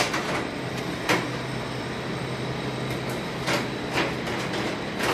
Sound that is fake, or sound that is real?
real